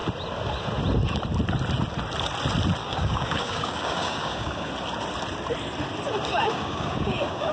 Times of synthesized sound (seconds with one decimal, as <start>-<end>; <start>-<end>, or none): 2.8-4.7; 6.3-7.5